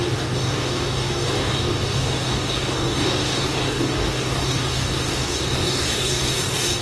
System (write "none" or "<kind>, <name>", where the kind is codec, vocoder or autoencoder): codec, DAC